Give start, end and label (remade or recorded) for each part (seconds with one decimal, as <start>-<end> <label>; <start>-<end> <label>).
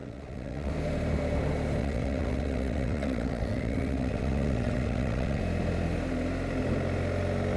0.0-0.7 remade; 0.7-1.8 recorded; 1.8-5.4 remade; 5.4-7.6 recorded